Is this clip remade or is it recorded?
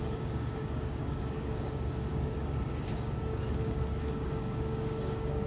remade